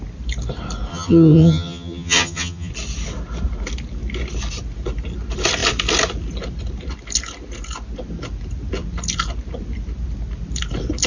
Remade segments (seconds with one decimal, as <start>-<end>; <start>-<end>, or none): 0.9-2.7